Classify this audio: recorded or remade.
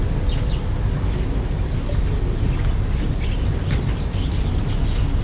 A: recorded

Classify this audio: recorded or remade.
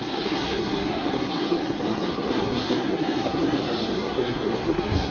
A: remade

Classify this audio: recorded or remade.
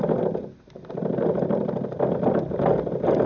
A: recorded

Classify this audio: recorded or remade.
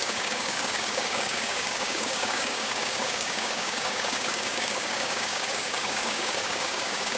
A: remade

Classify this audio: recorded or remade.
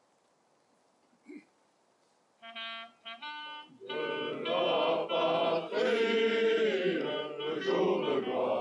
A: recorded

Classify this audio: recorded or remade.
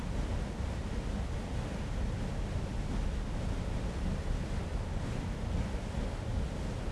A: recorded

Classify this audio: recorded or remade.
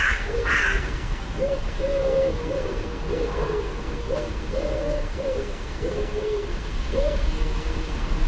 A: remade